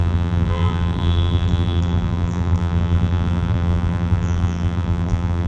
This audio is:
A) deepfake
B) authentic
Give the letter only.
A